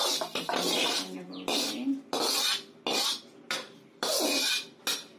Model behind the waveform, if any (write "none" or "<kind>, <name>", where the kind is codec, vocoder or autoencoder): none